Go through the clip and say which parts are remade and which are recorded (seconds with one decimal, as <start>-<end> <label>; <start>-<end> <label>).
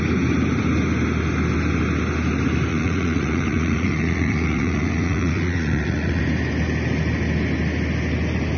0.0-2.7 recorded; 2.7-6.2 remade; 6.2-8.6 recorded